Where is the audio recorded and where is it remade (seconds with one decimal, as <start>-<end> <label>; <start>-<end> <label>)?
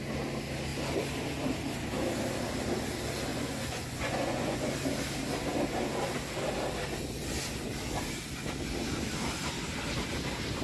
0.0-3.3 recorded; 3.3-4.7 remade; 4.7-10.6 recorded